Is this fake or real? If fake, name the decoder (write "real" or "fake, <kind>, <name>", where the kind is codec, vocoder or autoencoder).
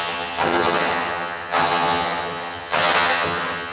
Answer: fake, vocoder, HiFi-GAN